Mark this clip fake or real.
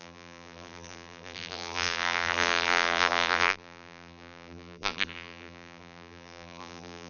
fake